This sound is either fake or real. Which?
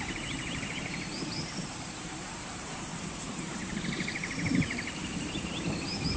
fake